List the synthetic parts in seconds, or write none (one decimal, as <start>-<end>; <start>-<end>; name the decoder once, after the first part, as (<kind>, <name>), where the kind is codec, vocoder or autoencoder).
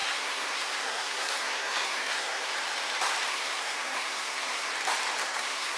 0.0-2.5 (codec, SNAC); 3.3-4.7; 5.2-5.8